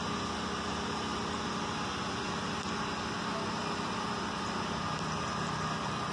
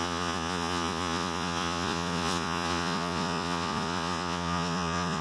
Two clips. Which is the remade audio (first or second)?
second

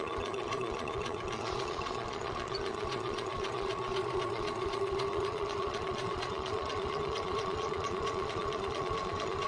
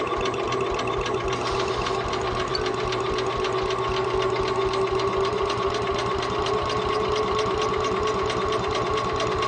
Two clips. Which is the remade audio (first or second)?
first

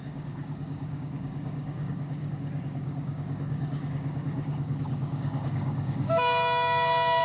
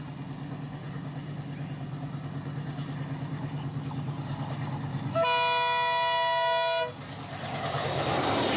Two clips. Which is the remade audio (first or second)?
first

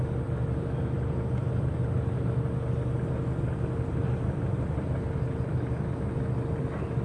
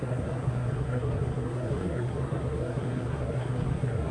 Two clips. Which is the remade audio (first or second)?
second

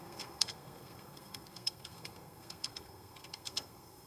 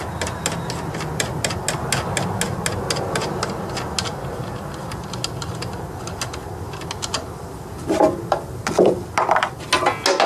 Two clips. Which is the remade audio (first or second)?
first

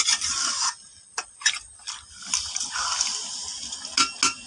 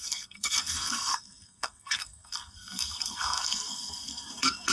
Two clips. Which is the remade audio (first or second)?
second